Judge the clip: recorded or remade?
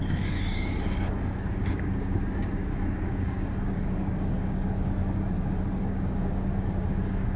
remade